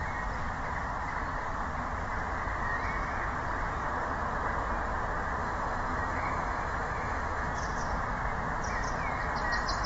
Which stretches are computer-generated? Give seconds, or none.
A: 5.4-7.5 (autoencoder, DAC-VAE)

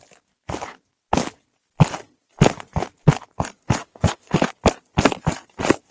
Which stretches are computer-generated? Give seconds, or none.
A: 3.8-4.5 (autoencoder, DAC-VAE)

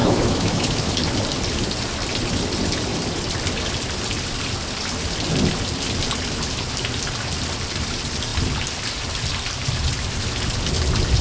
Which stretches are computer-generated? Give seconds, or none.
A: 0.0-0.9 (autoencoder, DAC-VAE)

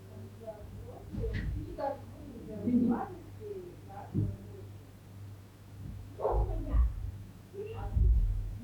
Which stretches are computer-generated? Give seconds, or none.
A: 0.0-0.5 (autoencoder, DAC-VAE); 1.1-2.6; 5.4-6.4; 7.1-8.6

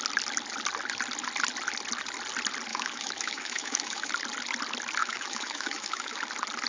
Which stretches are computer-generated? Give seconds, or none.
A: 2.7-4.1 (autoencoder, DAC-VAE); 5.0-6.2

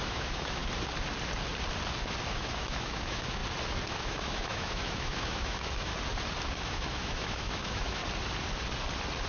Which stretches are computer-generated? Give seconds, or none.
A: 0.0-0.6 (autoencoder, DAC-VAE); 2.3-3.4; 3.9-5.9; 6.5-8.0

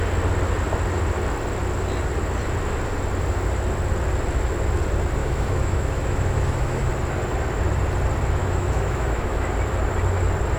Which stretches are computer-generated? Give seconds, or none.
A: 5.2-6.9 (autoencoder, DAC-VAE); 8.4-9.5

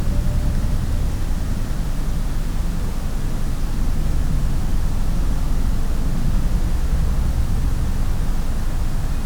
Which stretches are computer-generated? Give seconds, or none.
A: none